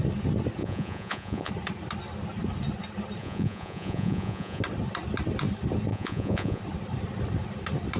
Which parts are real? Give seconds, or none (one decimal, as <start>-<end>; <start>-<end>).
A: 0.0-0.6; 1.5-3.2; 4.6-5.9; 6.6-8.0